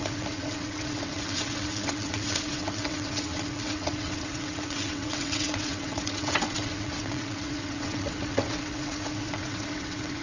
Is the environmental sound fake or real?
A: fake